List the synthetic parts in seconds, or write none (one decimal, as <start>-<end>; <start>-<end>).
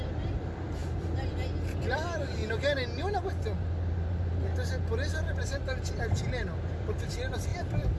0.0-2.4; 6.7-8.0